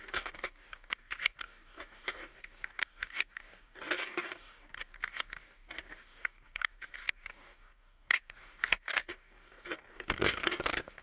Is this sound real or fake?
fake